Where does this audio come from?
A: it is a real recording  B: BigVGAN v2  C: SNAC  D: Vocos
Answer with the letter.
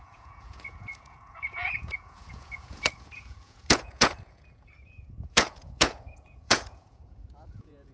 D